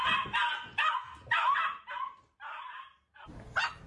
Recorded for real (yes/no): yes